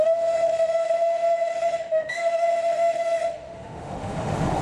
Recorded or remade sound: remade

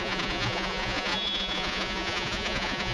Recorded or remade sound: remade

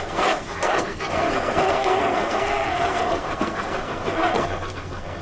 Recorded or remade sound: remade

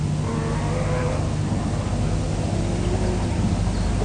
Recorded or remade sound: recorded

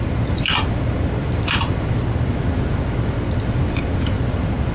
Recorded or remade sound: remade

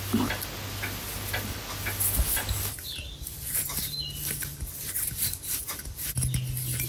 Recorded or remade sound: recorded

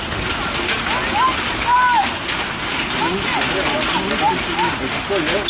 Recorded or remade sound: recorded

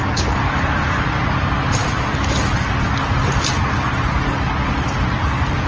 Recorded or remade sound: recorded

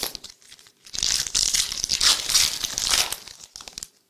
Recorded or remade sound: recorded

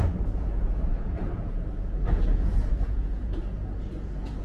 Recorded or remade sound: remade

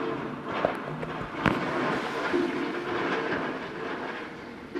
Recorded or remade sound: recorded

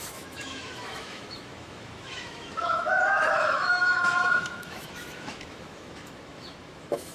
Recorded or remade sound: remade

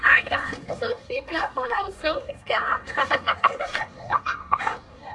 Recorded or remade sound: remade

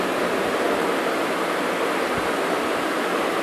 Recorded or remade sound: recorded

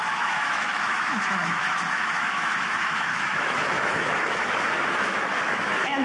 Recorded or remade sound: remade